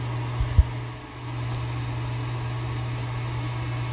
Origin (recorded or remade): recorded